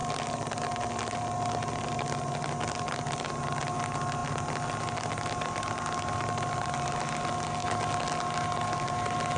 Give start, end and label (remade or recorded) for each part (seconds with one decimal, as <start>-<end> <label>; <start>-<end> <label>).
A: 0.0-9.4 recorded